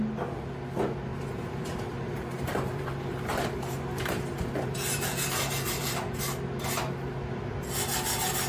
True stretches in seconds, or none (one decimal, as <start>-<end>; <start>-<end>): 0.0-1.1; 6.2-8.5